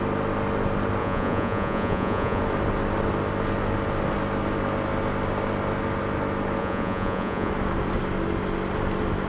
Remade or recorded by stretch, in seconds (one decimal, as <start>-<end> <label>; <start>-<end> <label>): 0.0-1.0 recorded; 1.0-2.4 remade; 2.4-6.6 recorded; 6.6-7.5 remade; 7.5-9.3 recorded